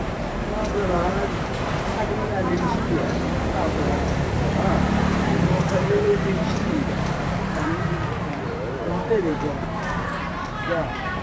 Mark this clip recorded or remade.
remade